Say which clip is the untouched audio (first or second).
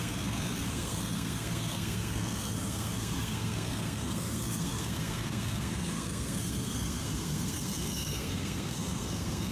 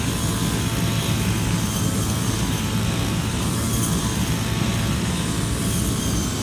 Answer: second